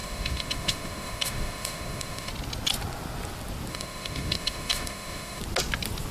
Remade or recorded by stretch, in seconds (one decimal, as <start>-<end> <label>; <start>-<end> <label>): 0.0-2.3 remade; 2.3-3.7 recorded; 3.7-5.4 remade; 5.4-6.1 recorded